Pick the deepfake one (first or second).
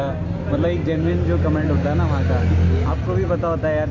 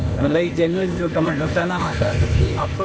second